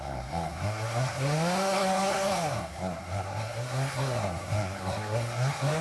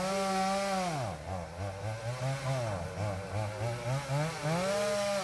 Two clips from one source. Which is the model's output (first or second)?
first